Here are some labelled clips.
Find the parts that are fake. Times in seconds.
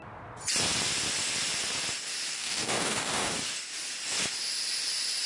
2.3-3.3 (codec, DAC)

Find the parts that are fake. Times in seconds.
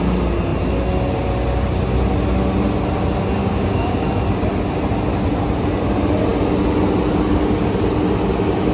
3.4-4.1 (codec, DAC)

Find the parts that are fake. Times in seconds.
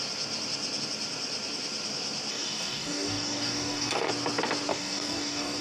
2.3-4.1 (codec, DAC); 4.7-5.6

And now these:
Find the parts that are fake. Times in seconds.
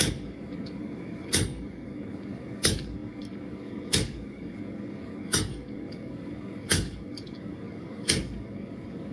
0.0-9.1 (codec, DAC)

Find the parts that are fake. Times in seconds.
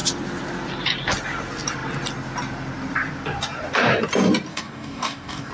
4.5-5.5 (codec, DAC)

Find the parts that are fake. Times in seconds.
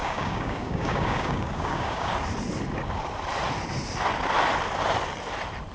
0.0-2.1 (codec, DAC)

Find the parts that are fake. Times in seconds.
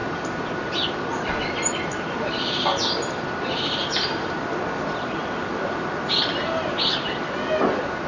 none